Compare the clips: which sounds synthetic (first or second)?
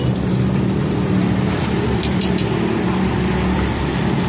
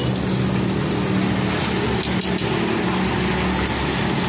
first